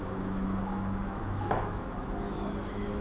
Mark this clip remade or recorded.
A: remade